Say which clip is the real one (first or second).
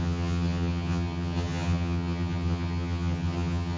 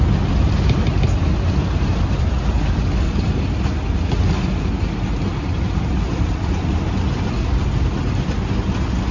second